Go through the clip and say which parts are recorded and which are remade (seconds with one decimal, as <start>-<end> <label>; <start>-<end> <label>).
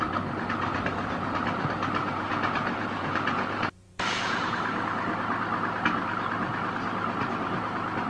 0.0-2.3 recorded; 2.3-4.5 remade; 4.5-8.1 recorded